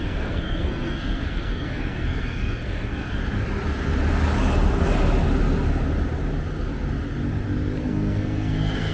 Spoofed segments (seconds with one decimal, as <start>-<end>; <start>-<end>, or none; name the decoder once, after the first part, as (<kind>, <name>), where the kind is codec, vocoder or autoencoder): 0.0-3.2 (codec, SNAC); 7.8-8.9